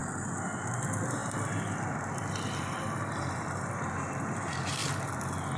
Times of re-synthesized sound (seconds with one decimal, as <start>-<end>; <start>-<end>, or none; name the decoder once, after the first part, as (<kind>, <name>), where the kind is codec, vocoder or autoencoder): 0.7-1.2 (vocoder, BigVGAN v2); 2.3-4.8